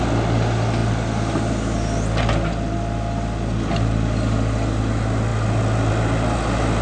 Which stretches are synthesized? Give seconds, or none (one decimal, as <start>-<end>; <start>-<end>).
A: none